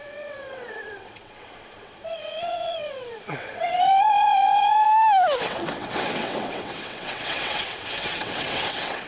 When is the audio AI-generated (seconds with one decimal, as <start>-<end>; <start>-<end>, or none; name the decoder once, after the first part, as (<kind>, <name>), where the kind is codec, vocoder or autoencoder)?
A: 0.0-4.9 (vocoder, WaveNeXt); 5.4-9.1